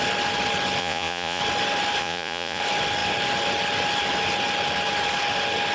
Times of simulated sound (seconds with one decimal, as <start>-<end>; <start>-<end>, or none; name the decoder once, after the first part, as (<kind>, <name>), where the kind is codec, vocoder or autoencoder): 0.8-1.4 (vocoder, Vocos); 2.0-2.6